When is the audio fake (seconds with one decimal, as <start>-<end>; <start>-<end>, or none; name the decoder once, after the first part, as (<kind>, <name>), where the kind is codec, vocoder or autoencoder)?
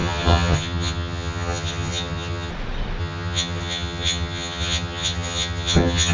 0.0-2.5 (vocoder, HiFi-GAN); 3.0-6.1